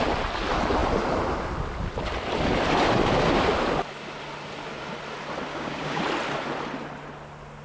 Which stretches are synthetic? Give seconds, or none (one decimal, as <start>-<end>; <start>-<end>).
5.5-6.0